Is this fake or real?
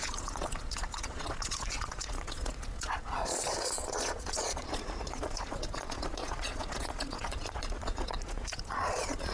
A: fake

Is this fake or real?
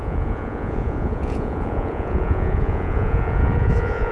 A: fake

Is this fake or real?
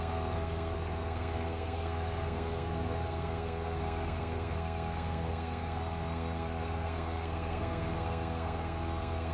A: fake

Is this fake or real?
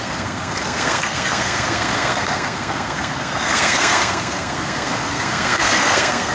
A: fake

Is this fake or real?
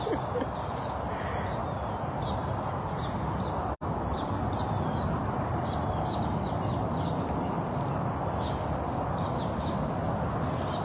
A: real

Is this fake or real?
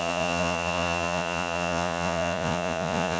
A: fake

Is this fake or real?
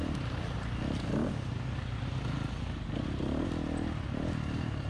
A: real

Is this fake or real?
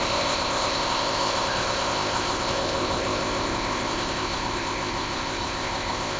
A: fake